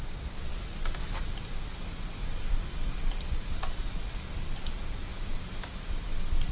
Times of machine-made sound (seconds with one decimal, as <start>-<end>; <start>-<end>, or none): none